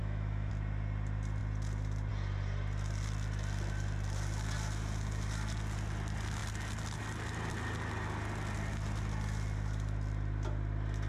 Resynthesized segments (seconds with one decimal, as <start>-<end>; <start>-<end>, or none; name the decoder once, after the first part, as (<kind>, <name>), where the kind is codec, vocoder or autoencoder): 0.0-0.5 (autoencoder, DAC-VAE)